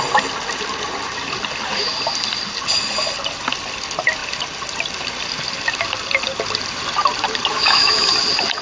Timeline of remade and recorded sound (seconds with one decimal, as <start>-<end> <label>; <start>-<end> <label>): 0.0-7.5 recorded; 7.5-8.1 remade; 8.1-8.6 recorded